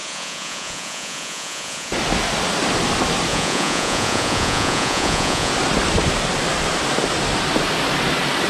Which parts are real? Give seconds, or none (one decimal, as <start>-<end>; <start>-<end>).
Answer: 1.9-3.3; 5.5-8.5